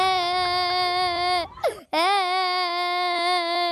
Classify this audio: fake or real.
real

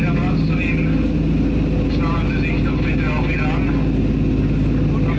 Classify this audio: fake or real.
real